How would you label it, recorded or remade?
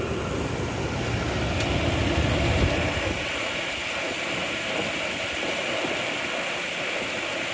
recorded